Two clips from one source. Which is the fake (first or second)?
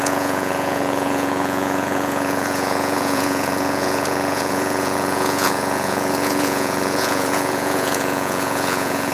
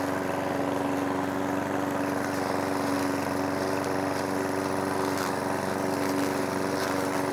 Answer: first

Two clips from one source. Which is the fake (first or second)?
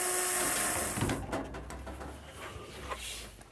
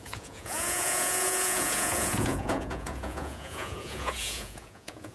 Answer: second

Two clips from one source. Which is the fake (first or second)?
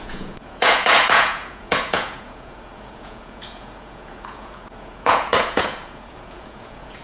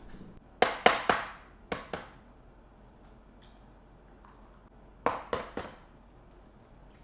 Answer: first